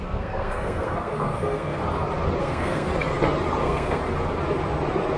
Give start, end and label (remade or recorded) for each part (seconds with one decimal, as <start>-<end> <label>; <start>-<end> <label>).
0.0-1.8 remade; 1.8-2.4 recorded; 2.4-2.9 remade; 2.9-3.6 recorded; 3.6-4.0 remade; 4.0-5.2 recorded